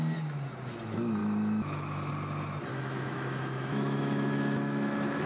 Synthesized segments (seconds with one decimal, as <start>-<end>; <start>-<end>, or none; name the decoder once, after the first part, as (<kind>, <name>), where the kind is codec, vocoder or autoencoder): 1.2-2.1 (autoencoder, DAC-VAE); 2.7-5.3

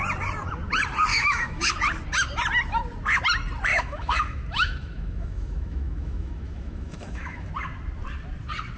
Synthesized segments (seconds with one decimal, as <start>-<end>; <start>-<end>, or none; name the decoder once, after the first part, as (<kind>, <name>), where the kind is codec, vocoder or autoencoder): 1.1-1.7 (autoencoder, DAC-VAE); 3.7-7.5

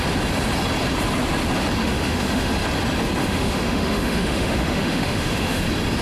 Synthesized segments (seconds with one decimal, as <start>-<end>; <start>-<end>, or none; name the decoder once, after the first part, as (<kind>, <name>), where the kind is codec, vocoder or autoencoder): 1.8-2.5 (autoencoder, DAC-VAE); 3.2-5.6

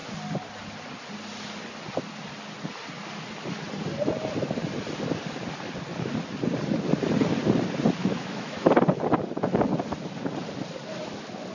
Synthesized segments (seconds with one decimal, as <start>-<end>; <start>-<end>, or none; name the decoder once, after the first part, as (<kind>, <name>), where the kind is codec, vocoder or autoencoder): 8.0-8.7 (autoencoder, DAC-VAE)

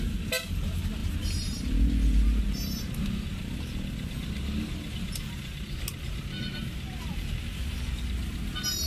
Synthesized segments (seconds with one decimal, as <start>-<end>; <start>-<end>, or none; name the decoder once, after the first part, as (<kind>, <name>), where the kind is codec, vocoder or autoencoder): none